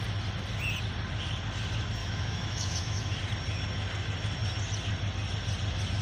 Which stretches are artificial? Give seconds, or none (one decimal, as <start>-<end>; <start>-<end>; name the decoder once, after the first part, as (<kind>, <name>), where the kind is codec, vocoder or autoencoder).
2.0-3.2 (autoencoder, DAC-VAE)